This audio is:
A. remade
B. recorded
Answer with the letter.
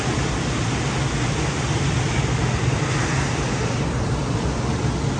B